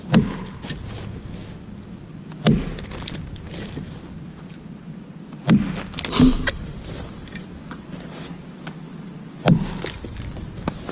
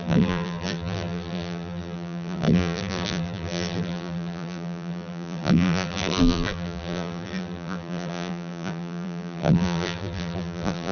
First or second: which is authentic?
first